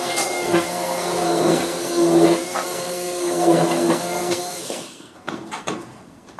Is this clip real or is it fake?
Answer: fake